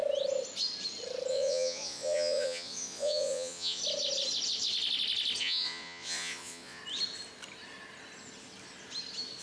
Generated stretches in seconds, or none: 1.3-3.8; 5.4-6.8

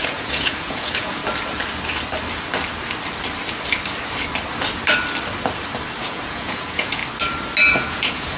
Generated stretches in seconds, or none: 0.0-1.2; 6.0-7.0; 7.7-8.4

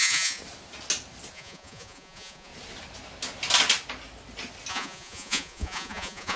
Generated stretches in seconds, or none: 0.0-0.4; 1.3-2.5; 4.7-6.4